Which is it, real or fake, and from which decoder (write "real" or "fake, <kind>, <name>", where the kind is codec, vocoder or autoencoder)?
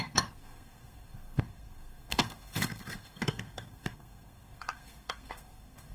fake, codec, SNAC